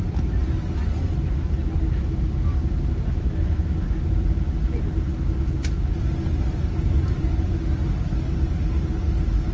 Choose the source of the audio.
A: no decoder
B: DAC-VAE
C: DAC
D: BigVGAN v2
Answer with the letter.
A